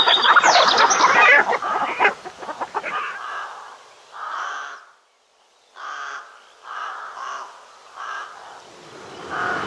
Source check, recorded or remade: recorded